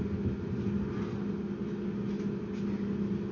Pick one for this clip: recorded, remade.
recorded